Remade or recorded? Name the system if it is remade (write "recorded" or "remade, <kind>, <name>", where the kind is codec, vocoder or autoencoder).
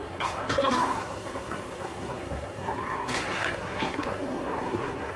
remade, codec, SNAC